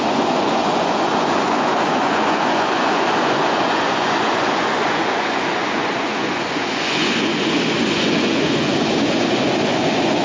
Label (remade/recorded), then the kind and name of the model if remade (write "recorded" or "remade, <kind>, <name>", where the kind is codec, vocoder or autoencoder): remade, vocoder, Vocos